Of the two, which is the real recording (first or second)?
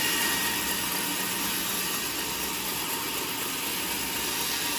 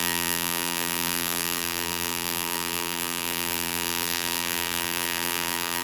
first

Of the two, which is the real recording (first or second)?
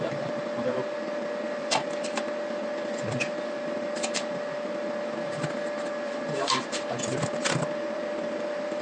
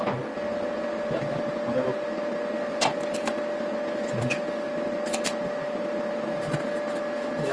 second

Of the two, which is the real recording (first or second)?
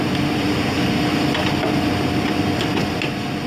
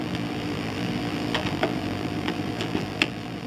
first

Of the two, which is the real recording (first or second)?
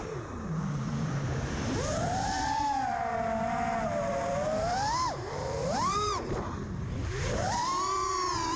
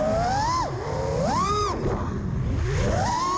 second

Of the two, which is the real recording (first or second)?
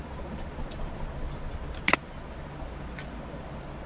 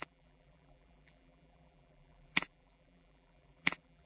first